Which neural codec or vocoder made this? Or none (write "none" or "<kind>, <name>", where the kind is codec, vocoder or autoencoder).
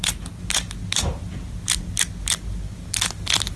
none